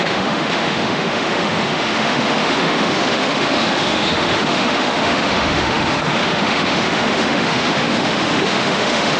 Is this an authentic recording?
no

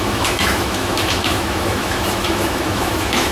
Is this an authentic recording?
no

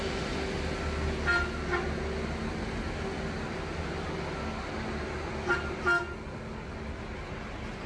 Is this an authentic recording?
yes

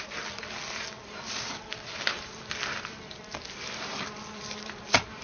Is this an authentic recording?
yes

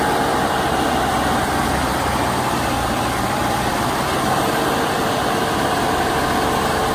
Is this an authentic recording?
no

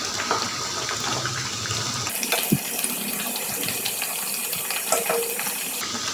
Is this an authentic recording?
yes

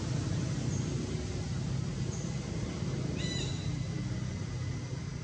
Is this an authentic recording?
yes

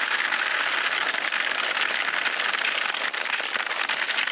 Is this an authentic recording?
yes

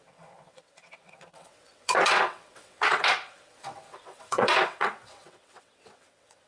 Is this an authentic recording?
no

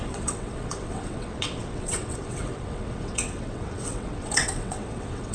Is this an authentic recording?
no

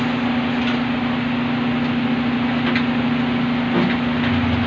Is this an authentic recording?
yes